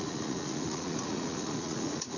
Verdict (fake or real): fake